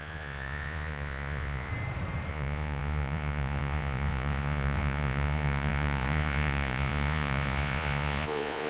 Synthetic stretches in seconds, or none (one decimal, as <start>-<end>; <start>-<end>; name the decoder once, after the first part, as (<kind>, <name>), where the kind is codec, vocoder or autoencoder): 0.0-1.7 (vocoder, Vocos); 2.3-8.7

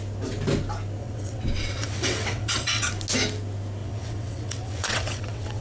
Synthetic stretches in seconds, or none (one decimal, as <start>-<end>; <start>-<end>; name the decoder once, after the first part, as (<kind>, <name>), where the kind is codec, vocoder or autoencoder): 1.0-2.9 (vocoder, WaveNeXt); 3.8-5.6